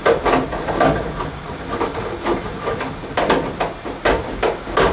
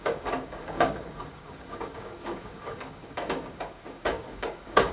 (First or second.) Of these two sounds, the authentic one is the first